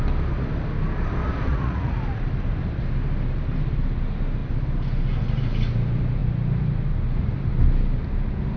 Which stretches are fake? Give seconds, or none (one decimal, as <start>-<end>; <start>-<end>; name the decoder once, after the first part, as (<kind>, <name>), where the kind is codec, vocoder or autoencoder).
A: 1.5-2.0 (vocoder, Vocos)